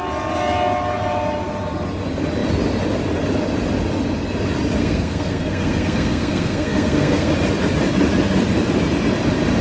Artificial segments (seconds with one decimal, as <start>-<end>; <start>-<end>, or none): 4.8-7.3